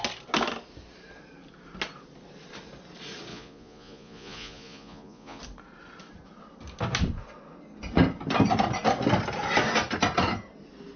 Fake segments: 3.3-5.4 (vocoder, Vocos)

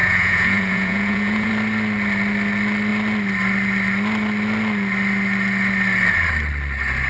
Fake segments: 0.0-1.5 (vocoder, Vocos)

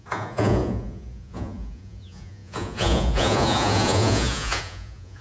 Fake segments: 0.0-5.2 (vocoder, Vocos)

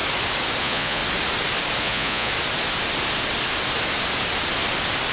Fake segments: 0.6-1.0 (vocoder, Vocos); 1.8-2.3